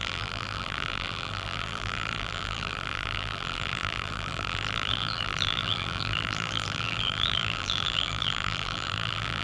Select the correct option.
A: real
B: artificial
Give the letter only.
B